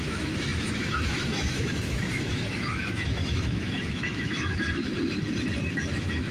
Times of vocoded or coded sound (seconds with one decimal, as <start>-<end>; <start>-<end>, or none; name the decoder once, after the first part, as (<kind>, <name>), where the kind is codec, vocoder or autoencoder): 0.0-4.9 (autoencoder, DAC-VAE); 5.8-6.3